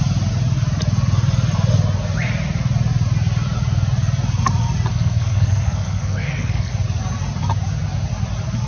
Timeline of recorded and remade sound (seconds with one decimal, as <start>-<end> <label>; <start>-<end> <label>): 0.0-4.9 recorded; 4.9-6.7 remade; 6.7-8.7 recorded